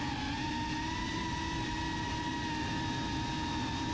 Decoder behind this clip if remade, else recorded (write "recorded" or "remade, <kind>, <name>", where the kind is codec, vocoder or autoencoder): recorded